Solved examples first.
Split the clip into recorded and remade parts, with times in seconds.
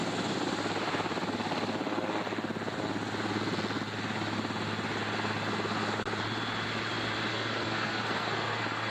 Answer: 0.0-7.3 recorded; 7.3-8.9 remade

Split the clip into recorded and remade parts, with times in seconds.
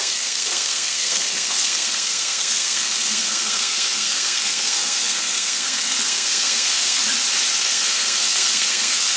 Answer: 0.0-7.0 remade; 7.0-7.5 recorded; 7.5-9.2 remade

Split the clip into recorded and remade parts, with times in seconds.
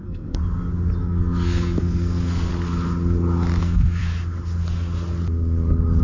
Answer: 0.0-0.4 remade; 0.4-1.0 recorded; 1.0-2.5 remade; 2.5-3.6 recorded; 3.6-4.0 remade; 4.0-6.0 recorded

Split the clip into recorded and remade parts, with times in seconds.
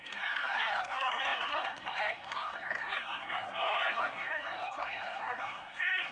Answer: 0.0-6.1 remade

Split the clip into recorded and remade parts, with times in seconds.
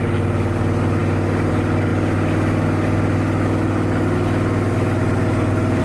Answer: 0.0-5.8 recorded